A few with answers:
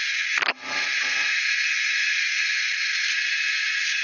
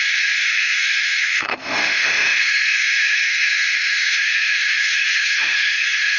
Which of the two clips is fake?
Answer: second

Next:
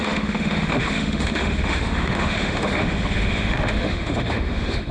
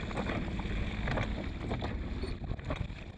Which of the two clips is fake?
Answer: first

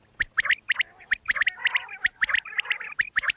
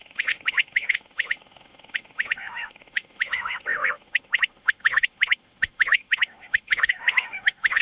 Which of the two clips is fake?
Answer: second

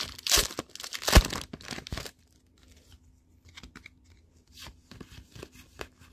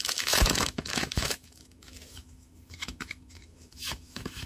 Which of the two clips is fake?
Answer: second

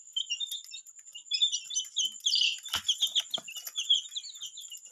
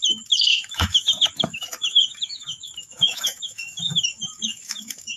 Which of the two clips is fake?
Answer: second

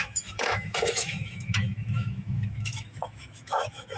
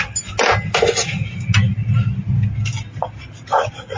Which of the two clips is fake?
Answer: first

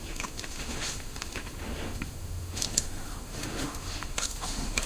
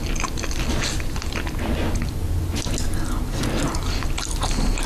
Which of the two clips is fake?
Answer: first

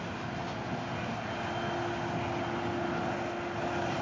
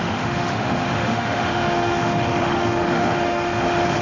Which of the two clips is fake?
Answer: second